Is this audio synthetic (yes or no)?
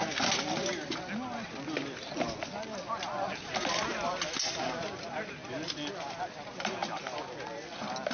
no